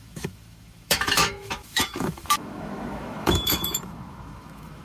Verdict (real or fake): fake